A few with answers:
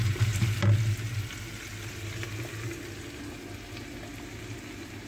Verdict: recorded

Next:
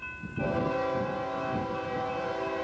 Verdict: recorded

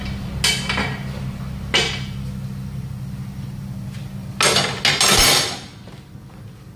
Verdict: recorded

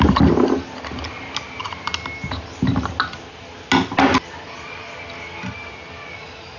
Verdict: recorded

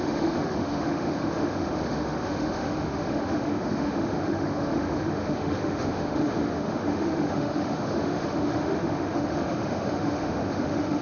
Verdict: remade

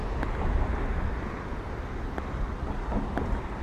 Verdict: recorded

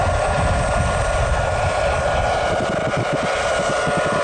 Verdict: recorded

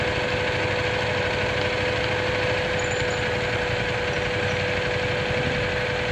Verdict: recorded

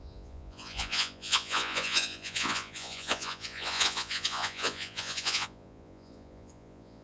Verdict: remade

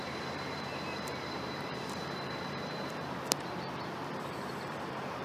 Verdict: remade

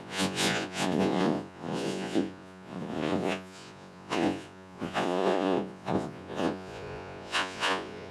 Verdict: remade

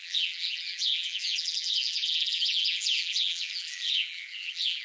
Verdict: remade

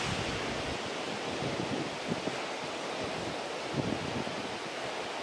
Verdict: recorded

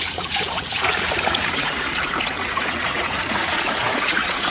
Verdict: remade